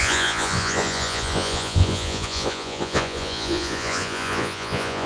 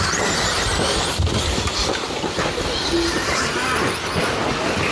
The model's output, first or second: first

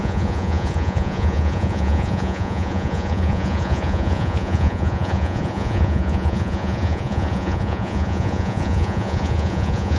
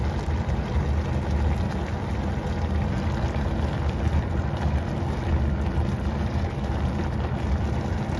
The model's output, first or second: first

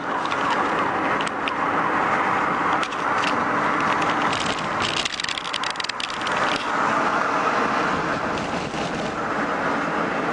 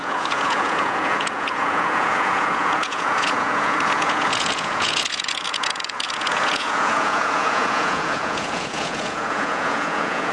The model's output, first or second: second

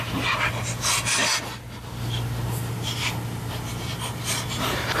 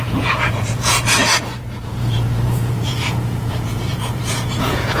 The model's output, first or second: second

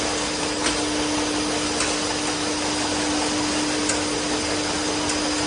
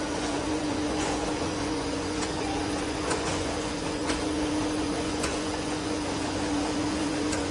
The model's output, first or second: second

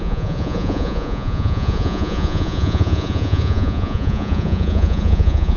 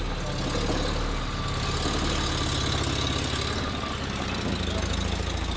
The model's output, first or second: first